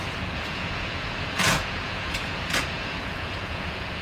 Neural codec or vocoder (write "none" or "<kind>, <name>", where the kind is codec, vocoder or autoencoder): vocoder, Vocos